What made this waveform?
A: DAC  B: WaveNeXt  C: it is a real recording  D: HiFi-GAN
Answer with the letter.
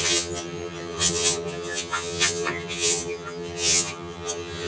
D